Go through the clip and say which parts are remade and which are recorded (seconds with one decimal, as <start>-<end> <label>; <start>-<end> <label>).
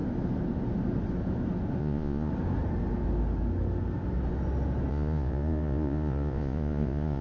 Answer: 0.0-1.8 recorded; 1.8-2.3 remade; 2.3-4.9 recorded; 4.9-7.2 remade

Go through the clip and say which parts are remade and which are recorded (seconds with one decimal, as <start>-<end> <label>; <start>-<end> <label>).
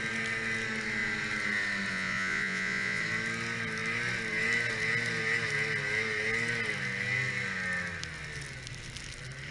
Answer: 0.0-1.9 recorded; 1.9-3.0 remade; 3.0-9.5 recorded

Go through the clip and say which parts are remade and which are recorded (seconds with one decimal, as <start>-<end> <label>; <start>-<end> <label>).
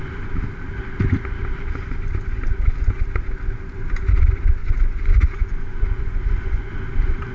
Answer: 0.0-4.6 recorded; 4.6-6.7 remade; 6.7-7.3 recorded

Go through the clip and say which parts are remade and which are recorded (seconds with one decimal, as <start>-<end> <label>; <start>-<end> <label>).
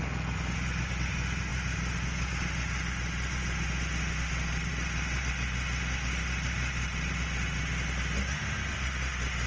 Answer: 0.0-9.5 recorded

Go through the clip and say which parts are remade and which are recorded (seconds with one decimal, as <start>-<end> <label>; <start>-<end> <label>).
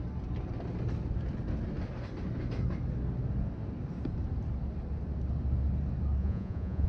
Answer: 0.0-6.2 recorded; 6.2-6.9 remade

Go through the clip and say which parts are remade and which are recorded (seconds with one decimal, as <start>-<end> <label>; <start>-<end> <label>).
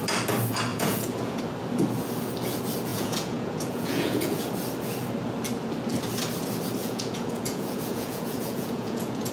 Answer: 0.0-0.7 recorded; 0.7-1.4 remade; 1.4-2.9 recorded; 2.9-4.4 remade; 4.4-6.8 recorded; 6.8-9.3 remade